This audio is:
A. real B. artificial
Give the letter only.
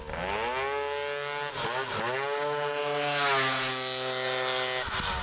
A